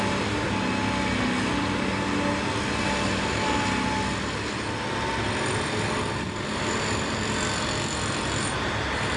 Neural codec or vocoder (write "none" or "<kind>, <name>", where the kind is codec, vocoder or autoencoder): none